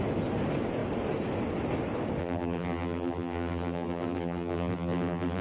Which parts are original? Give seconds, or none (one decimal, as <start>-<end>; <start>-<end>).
0.0-2.2